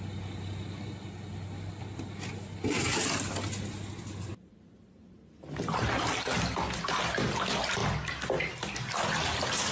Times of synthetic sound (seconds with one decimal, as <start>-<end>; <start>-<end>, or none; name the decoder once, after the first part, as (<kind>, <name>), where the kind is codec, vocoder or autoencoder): none